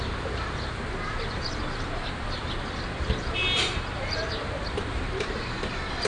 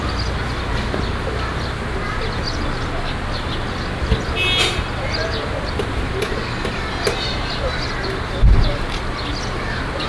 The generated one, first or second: first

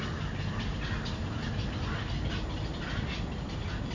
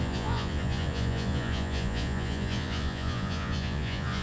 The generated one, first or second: second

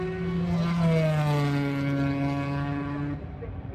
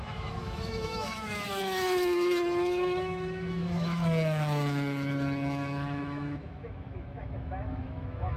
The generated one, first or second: second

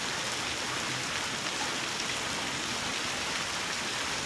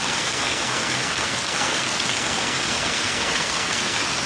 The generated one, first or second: second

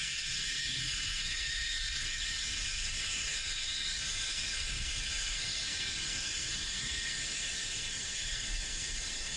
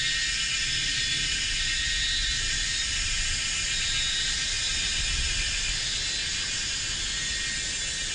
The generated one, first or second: first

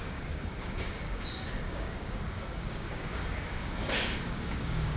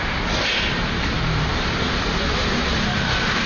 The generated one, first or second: first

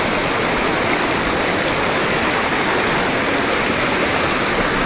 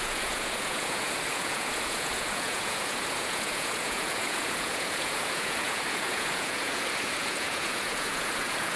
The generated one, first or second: second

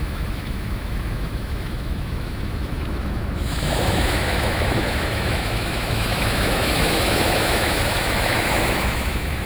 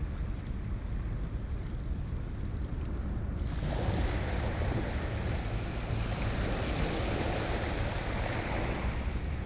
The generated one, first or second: first